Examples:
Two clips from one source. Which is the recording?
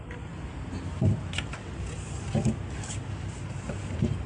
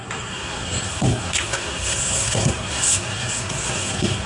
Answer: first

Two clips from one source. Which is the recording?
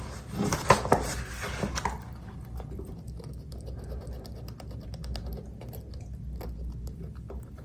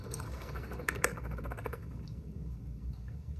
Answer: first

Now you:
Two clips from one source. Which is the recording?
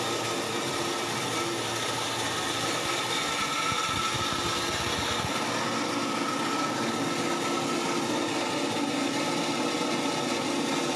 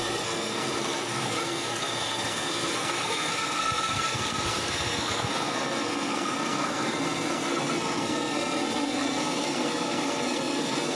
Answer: first